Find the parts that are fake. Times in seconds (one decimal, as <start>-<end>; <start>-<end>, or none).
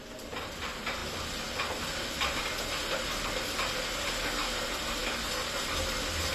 0.0-1.0; 4.6-5.0